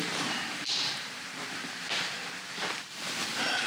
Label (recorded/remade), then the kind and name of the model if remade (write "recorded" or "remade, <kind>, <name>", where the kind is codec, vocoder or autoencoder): remade, vocoder, BigVGAN v2